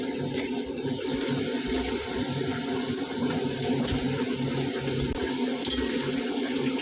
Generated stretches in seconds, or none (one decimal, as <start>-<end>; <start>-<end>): 0.0-2.6; 3.8-6.8